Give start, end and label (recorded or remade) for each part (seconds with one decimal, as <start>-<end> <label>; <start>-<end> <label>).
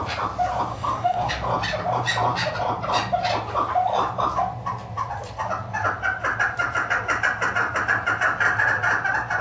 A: 0.0-0.7 recorded; 0.7-1.3 remade; 1.3-9.4 recorded